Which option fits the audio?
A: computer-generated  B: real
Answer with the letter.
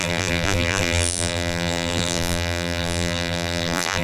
A